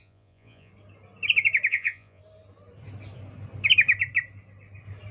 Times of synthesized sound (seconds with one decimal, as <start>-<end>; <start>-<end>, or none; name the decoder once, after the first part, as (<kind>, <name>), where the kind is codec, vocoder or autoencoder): 0.0-0.7 (vocoder, Vocos); 1.7-2.2